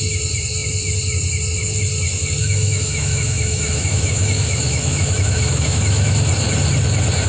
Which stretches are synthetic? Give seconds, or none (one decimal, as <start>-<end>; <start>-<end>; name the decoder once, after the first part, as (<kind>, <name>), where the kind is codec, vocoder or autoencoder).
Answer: 2.4-6.3 (autoencoder, DAC-VAE)